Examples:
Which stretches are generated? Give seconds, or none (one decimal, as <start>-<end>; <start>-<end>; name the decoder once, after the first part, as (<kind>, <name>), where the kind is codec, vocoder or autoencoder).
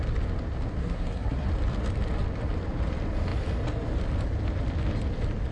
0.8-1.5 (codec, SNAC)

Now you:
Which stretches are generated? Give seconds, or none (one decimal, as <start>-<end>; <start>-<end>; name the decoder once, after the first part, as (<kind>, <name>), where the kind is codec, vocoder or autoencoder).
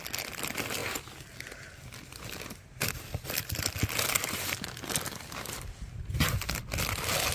none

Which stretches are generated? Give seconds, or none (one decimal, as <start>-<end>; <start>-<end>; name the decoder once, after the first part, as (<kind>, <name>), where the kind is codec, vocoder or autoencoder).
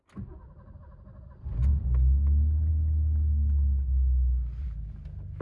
none